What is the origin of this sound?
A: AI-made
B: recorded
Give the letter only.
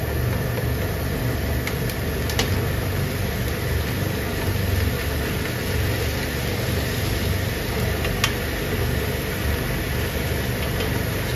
B